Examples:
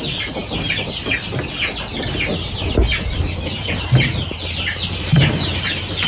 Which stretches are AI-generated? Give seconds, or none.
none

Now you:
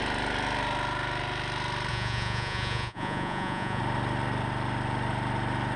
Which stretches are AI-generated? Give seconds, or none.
1.9-3.8 (vocoder, Vocos)

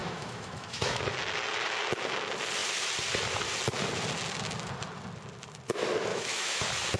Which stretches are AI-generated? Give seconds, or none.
0.0-1.0 (autoencoder, DAC-VAE); 6.1-6.6

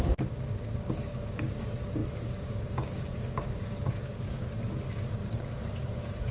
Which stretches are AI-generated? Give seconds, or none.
0.0-6.3 (codec, DAC)

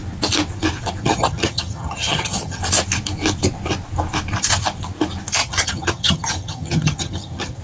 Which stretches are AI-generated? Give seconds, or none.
1.0-2.6 (vocoder, HiFi-GAN); 5.4-7.6

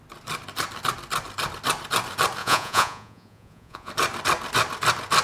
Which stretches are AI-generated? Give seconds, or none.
2.4-3.9 (vocoder, Vocos)

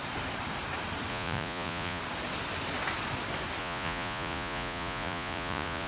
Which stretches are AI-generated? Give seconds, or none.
1.1-2.0 (vocoder, Vocos); 3.6-5.9